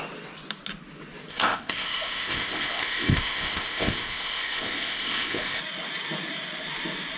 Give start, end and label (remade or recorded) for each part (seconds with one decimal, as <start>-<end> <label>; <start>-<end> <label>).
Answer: 0.0-1.3 recorded; 1.3-5.6 remade; 5.6-7.2 recorded